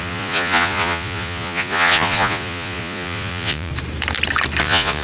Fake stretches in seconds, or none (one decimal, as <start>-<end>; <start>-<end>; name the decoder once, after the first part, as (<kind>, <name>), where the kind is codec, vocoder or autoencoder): 0.0-3.7 (vocoder, Vocos); 4.6-5.0